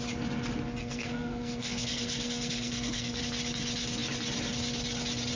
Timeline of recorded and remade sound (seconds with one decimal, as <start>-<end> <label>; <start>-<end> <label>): 0.0-0.8 recorded; 0.8-3.2 remade; 3.2-5.3 recorded